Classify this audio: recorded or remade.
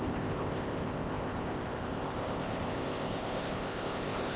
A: remade